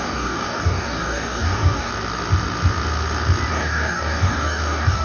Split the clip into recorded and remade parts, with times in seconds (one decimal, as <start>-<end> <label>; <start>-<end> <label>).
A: 0.0-1.9 remade; 1.9-3.5 recorded; 3.5-5.0 remade